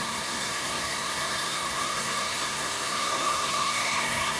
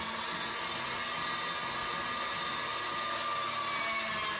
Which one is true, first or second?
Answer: second